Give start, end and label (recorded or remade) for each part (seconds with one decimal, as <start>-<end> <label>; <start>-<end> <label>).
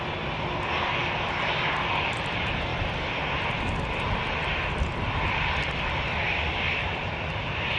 0.0-2.7 recorded; 2.7-7.8 remade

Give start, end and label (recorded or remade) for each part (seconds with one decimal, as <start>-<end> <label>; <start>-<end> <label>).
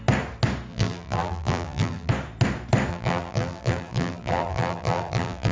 0.0-0.7 recorded; 0.7-2.1 remade; 2.1-2.9 recorded; 2.9-5.5 remade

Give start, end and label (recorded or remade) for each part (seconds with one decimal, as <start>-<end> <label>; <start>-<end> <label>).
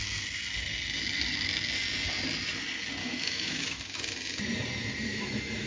0.0-3.0 recorded; 3.0-3.8 remade; 3.8-5.1 recorded; 5.1-5.7 remade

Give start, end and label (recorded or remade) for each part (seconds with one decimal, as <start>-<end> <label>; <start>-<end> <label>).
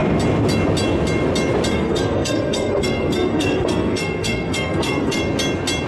0.0-1.7 recorded; 1.7-5.2 remade; 5.2-5.9 recorded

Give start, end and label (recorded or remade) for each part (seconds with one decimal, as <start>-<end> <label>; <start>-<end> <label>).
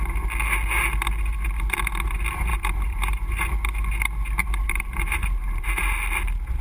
0.0-2.5 recorded; 2.5-3.3 remade; 3.3-4.4 recorded; 4.4-5.8 remade; 5.8-6.6 recorded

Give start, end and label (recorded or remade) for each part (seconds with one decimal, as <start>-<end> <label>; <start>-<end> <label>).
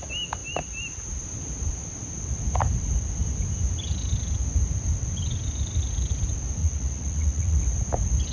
0.0-6.6 recorded; 6.6-7.6 remade; 7.6-8.3 recorded